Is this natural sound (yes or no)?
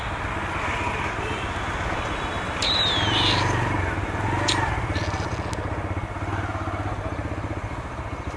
yes